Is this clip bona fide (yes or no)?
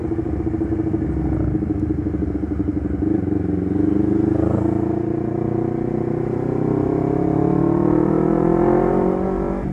yes